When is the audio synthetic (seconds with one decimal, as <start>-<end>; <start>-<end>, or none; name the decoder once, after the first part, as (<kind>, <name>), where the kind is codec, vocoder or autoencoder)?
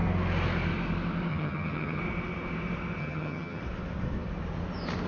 1.3-2.0 (vocoder, HiFi-GAN); 3.0-3.6